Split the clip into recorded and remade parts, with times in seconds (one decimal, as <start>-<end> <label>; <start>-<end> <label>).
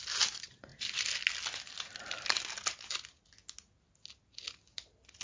0.0-5.2 recorded